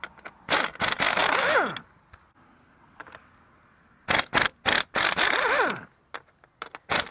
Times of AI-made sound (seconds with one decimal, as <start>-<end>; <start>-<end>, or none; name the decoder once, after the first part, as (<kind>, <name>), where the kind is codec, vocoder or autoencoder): 0.0-1.2 (vocoder, BigVGAN v2); 4.8-7.1